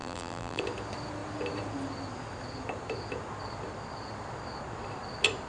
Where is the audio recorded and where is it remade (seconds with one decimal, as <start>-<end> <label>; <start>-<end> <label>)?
0.0-0.6 remade; 0.6-5.5 recorded